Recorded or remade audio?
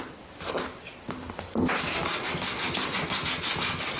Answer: recorded